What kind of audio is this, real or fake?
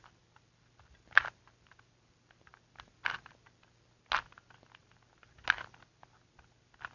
real